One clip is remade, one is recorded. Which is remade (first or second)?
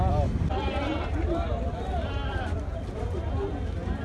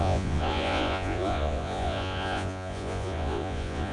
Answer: second